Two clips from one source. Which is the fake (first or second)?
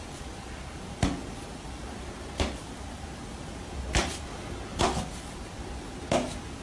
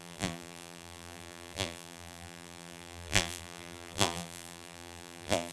second